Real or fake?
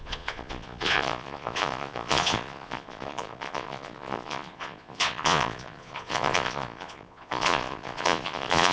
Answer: fake